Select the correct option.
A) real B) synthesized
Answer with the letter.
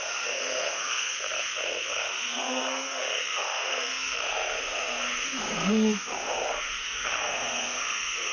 B